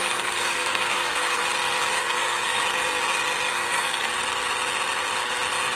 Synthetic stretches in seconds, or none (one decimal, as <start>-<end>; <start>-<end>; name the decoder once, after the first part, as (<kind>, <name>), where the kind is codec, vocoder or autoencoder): 0.0-1.4 (codec, SNAC); 2.0-2.6; 3.5-4.1